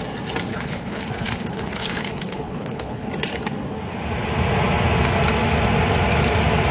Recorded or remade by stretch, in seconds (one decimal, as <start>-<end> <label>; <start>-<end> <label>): 0.0-0.5 recorded; 0.5-3.1 remade; 3.1-6.7 recorded